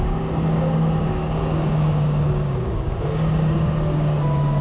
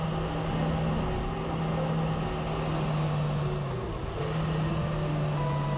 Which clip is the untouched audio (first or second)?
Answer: second